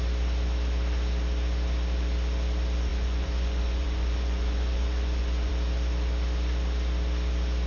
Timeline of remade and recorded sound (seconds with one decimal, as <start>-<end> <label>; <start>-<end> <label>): 0.0-2.9 recorded; 2.9-5.5 remade; 5.5-7.7 recorded